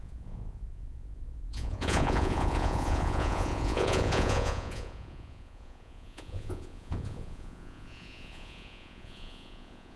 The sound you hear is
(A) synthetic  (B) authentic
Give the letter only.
A